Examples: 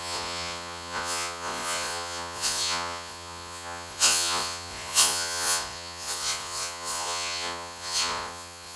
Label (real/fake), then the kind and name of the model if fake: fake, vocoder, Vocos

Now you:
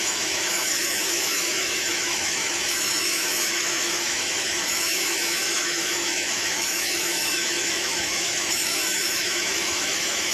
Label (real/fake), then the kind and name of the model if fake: fake, autoencoder, DAC-VAE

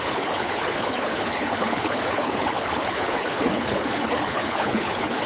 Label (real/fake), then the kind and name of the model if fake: fake, codec, HILCodec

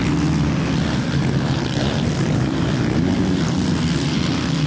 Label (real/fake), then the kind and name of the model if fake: fake, vocoder, BigVGAN v2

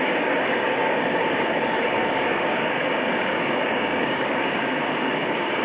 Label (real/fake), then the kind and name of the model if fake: fake, codec, DAC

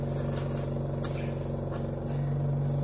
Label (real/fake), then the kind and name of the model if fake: real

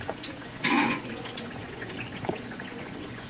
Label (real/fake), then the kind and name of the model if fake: fake, vocoder, Vocos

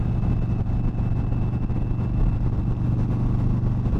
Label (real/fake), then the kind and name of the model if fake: real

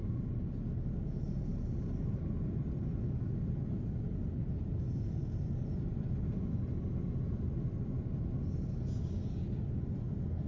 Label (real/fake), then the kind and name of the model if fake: real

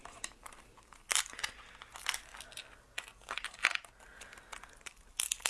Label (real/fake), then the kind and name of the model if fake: real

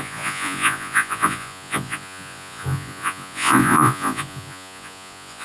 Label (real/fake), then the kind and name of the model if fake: fake, vocoder, Vocos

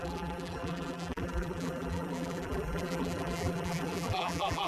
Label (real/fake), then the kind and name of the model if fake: fake, vocoder, BigVGAN v2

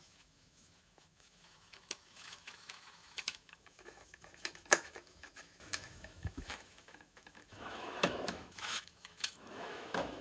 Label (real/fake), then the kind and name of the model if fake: fake, autoencoder, DAC-VAE